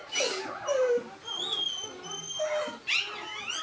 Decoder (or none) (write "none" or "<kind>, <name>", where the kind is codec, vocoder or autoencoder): none